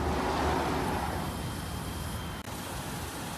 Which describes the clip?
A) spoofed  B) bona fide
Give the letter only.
B